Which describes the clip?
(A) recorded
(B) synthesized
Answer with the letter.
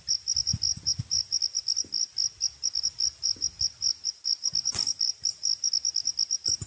A